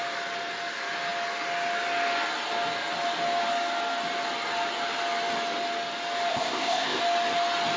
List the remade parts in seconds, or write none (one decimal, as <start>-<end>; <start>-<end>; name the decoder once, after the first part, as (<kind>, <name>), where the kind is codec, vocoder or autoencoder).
6.3-7.0 (codec, ZipCodec)